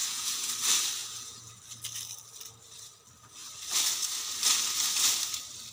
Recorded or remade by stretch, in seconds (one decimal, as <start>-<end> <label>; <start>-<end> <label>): 0.0-0.5 remade; 0.5-1.0 recorded; 1.0-1.6 remade; 1.6-5.7 recorded